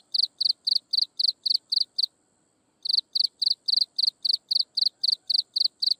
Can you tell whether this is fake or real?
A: real